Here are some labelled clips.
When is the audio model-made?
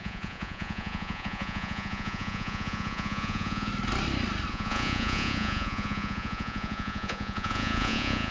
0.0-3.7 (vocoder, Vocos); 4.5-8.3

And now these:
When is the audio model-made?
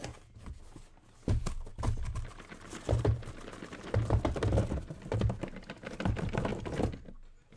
none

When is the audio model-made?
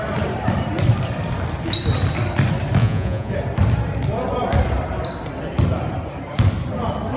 2.8-3.3 (vocoder, Vocos)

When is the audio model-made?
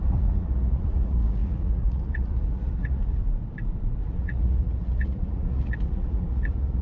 0.0-3.2 (vocoder, Vocos); 4.0-6.8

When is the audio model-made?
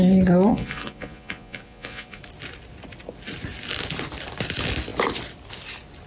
0.5-2.2 (vocoder, Vocos)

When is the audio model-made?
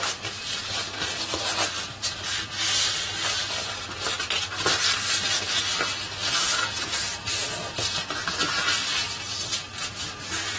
none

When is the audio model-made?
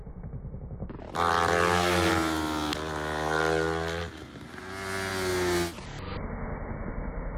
none